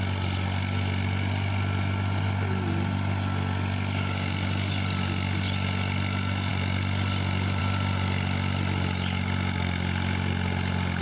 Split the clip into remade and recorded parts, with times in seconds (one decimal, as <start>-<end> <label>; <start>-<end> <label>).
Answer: 0.0-11.0 recorded